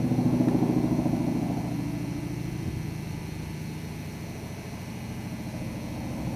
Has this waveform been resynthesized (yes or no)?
no